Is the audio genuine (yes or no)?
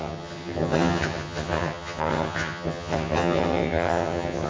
no